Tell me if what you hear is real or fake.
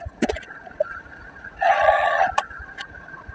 fake